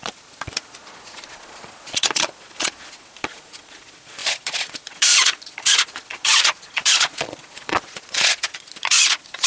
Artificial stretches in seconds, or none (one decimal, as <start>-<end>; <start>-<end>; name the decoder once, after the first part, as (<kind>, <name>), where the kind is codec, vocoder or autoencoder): 0.0-9.5 (vocoder, Vocos)